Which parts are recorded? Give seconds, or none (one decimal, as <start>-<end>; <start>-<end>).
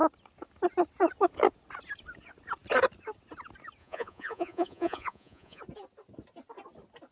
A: 0.0-3.8; 5.6-7.1